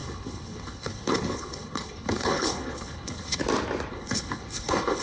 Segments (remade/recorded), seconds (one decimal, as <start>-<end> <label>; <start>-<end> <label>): 0.0-3.4 remade; 3.4-3.9 recorded; 3.9-5.0 remade